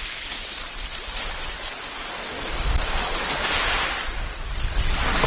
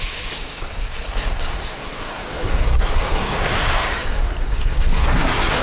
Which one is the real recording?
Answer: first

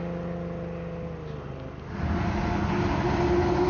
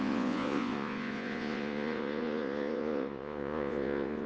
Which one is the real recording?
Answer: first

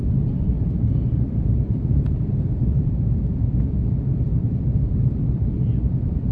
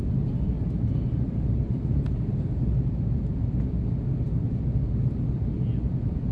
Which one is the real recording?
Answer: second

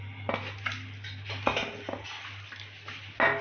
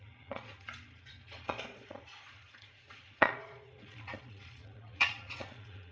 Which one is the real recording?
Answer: first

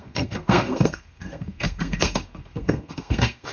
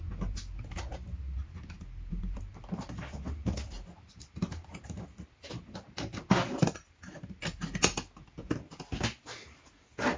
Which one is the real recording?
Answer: second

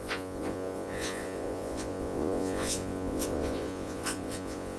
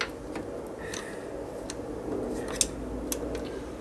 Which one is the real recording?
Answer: second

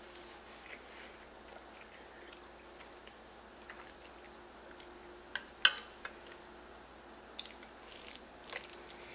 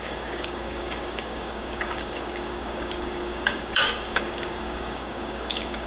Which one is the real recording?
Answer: first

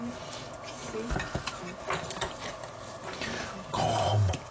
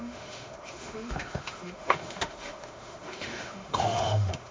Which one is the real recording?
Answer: first